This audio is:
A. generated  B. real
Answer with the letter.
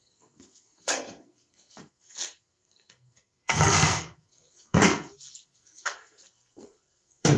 A